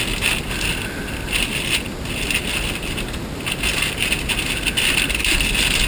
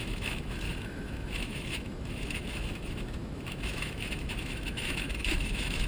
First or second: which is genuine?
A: first